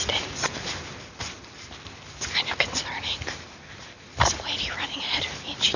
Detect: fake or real real